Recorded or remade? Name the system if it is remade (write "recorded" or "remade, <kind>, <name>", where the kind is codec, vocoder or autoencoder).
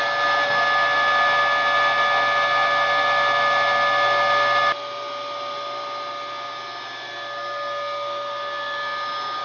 recorded